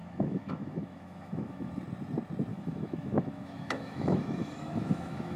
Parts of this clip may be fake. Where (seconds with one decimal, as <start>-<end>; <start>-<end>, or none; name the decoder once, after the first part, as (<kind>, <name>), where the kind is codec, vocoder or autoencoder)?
0.0-1.7 (autoencoder, DAC-VAE); 2.5-5.4